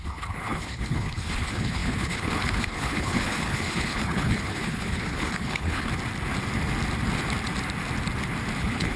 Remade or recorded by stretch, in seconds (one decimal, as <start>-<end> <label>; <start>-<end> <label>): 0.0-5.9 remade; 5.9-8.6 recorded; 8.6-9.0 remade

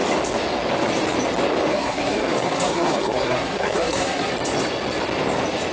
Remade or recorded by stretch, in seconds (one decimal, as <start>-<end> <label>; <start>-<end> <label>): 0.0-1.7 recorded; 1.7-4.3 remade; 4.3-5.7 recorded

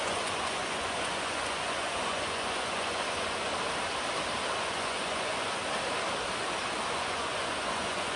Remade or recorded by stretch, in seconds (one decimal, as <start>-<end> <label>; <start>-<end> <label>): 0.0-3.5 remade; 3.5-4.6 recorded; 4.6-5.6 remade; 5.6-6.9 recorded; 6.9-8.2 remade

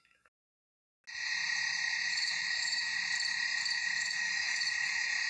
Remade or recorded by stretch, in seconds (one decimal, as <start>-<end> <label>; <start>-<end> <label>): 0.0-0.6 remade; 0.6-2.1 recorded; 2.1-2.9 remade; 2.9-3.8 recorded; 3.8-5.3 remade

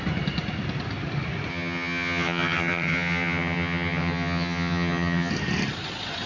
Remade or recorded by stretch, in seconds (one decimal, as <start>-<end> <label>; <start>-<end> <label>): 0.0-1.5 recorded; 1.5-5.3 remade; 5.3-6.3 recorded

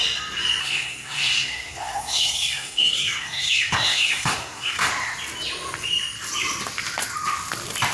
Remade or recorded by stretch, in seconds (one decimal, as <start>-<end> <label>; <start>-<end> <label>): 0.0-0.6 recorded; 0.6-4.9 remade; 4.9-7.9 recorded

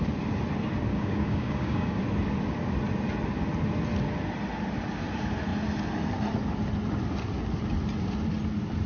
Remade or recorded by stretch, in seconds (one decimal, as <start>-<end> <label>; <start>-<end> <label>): 0.0-0.9 recorded; 0.9-2.0 remade; 2.0-8.9 recorded

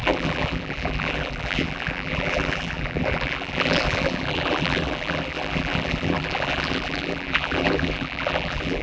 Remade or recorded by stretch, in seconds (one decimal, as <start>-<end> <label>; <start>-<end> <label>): 0.0-8.8 remade